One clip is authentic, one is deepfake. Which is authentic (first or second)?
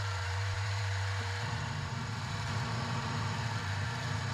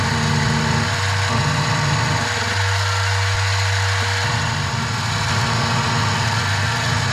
second